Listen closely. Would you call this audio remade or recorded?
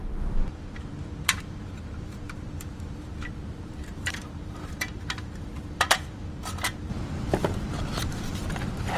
remade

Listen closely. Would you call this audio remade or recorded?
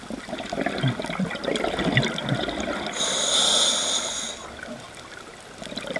recorded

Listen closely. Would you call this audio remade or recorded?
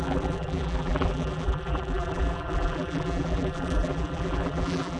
remade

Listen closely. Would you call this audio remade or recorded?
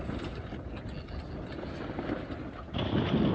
recorded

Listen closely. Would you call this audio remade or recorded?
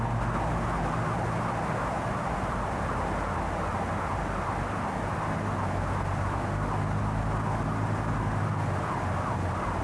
recorded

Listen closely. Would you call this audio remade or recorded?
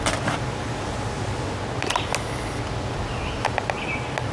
recorded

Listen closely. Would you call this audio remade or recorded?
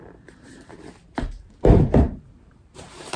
remade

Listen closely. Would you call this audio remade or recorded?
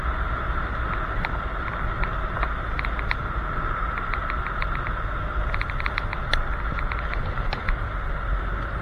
recorded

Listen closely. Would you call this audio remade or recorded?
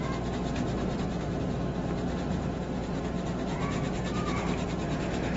recorded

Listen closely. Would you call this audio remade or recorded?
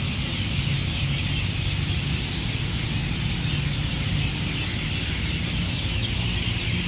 recorded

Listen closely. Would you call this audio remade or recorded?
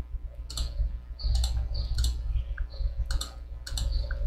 recorded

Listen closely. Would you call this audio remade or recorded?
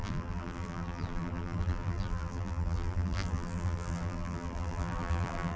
remade